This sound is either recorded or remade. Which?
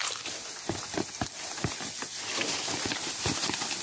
recorded